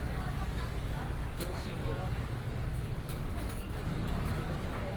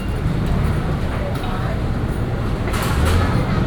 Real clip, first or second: second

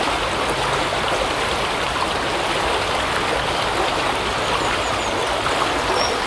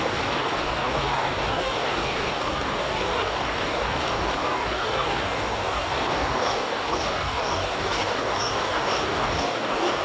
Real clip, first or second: first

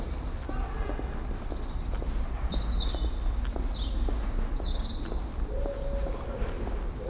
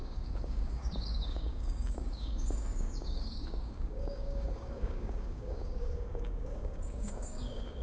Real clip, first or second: first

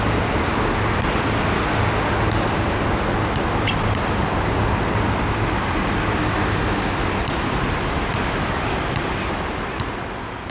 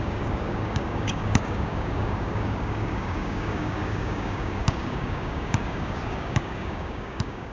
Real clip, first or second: first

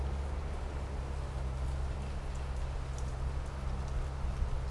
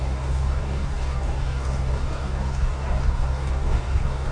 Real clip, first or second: first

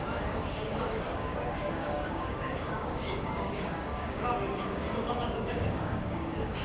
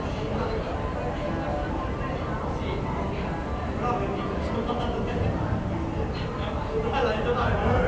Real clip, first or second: second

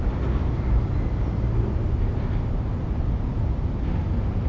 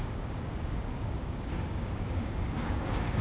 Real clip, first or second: first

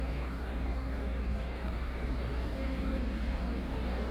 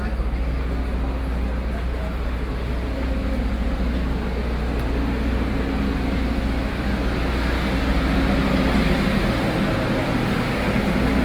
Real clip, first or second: second